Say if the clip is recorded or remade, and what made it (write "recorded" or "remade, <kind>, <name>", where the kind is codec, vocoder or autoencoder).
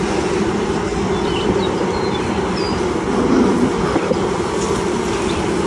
recorded